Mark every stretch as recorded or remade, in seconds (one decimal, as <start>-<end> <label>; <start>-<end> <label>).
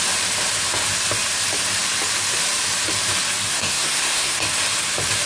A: 0.0-3.5 recorded; 3.5-4.4 remade; 4.4-5.3 recorded